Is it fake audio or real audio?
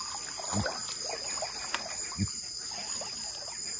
real